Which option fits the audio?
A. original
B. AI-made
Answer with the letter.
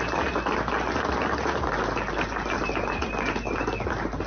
A